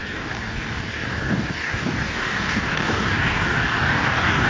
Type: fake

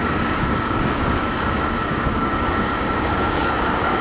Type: fake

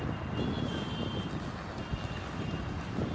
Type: real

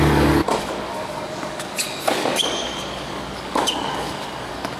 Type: fake